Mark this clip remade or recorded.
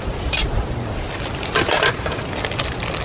recorded